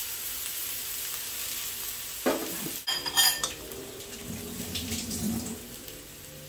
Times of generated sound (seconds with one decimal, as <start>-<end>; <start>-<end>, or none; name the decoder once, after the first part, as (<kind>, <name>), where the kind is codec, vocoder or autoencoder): 0.0-1.0 (vocoder, BigVGAN v2); 2.4-6.0